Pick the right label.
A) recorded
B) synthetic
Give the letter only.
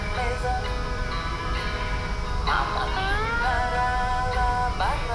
A